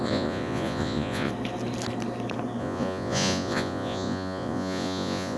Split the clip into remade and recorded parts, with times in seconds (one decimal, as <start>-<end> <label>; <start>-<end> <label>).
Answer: 0.0-1.3 remade; 1.3-2.6 recorded; 2.6-5.4 remade